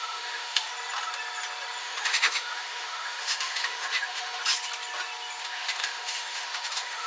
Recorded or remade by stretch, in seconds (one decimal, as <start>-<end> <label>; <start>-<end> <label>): 0.0-0.7 remade; 0.7-1.8 recorded; 1.8-4.4 remade; 4.4-5.4 recorded; 5.4-7.1 remade